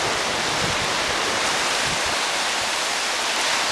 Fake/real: real